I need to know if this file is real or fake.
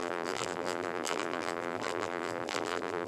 fake